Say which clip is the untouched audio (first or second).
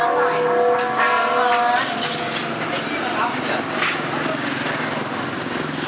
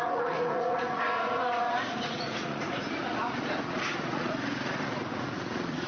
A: first